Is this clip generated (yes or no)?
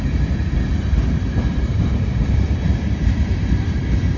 yes